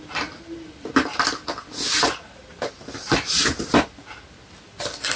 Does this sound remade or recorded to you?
recorded